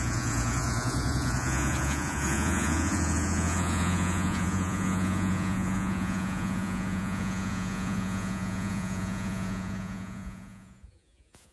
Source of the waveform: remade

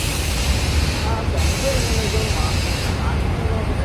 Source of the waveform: recorded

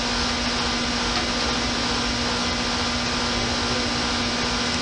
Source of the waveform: recorded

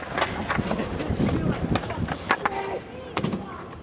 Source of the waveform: recorded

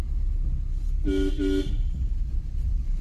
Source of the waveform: recorded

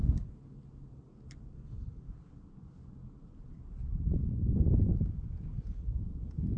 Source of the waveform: recorded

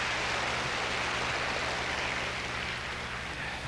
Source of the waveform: recorded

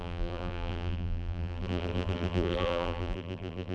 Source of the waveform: remade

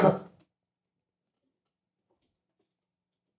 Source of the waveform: recorded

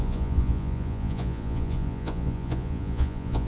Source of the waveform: remade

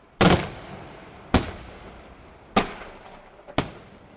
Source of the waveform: recorded